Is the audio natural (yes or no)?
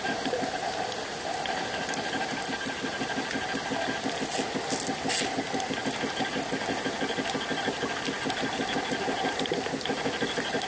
yes